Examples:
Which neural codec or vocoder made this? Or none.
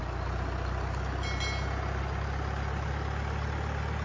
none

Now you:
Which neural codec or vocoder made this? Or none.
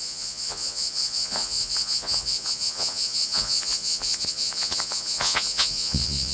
vocoder, Vocos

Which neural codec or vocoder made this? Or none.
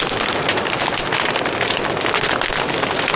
none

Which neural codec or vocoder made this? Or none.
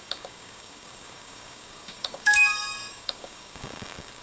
codec, DAC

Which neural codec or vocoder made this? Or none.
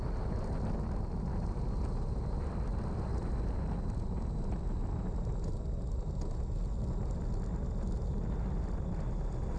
none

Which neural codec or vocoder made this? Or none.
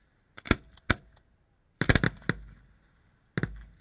none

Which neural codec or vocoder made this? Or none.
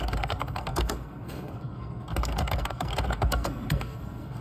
codec, SNAC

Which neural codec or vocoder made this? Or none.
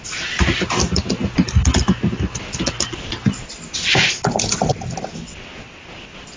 none